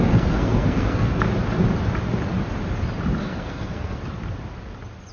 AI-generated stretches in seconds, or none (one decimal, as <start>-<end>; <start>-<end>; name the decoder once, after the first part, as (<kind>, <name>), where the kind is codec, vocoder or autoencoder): 0.0-1.3 (codec, SNAC); 3.2-4.0

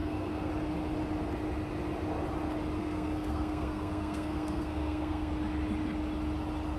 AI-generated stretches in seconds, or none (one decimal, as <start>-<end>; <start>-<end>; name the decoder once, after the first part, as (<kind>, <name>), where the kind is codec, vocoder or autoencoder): 0.0-0.5 (codec, SNAC); 2.8-5.3

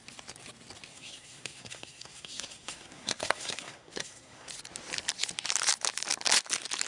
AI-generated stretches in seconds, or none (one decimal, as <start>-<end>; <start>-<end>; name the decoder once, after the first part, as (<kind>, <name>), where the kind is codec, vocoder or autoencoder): 0.9-4.5 (codec, SNAC)

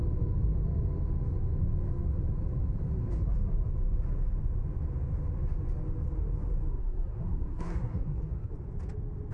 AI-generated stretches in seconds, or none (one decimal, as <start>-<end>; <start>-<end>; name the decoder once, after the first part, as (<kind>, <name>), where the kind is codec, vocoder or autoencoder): 6.7-8.5 (codec, SNAC)

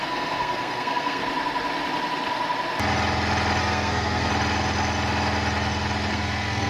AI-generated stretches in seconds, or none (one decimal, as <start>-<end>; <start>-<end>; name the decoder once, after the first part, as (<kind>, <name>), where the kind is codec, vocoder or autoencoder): 0.0-1.2 (codec, SNAC); 3.6-4.3; 6.1-6.7